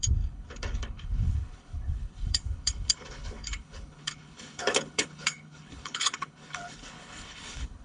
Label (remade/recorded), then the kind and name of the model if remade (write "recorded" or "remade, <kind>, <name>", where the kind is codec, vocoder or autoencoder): remade, codec, HILCodec